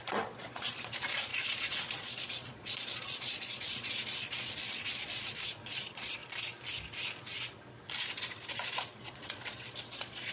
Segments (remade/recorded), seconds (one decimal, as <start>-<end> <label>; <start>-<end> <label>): 0.0-6.2 remade; 6.2-8.5 recorded; 8.5-10.3 remade